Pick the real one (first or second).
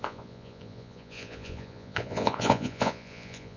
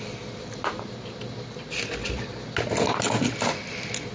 second